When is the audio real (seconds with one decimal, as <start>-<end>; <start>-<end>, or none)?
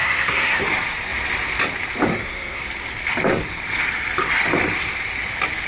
0.6-2.1; 2.6-5.7